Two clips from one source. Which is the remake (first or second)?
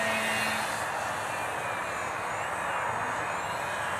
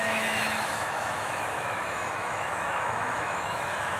second